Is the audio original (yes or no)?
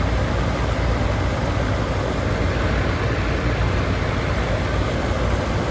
yes